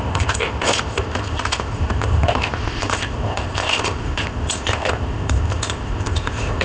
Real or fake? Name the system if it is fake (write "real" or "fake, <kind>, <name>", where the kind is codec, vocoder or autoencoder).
fake, codec, ZipCodec